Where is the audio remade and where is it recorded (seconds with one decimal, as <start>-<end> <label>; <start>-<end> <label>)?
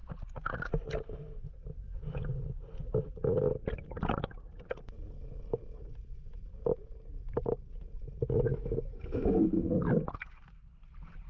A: 0.0-8.5 recorded; 8.5-9.4 remade; 9.4-11.3 recorded